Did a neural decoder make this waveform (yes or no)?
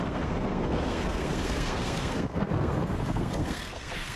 yes